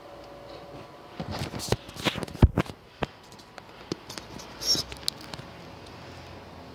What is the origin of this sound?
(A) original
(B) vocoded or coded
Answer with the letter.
A